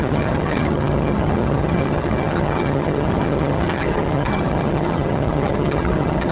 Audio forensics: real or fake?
fake